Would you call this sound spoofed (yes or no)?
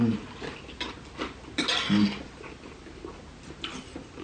no